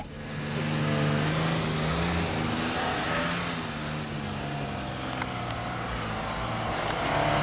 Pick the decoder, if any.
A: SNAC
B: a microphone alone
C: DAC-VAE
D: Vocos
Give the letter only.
B